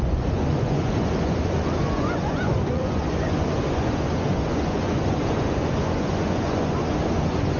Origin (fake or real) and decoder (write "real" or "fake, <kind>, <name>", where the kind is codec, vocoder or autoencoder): fake, vocoder, Vocos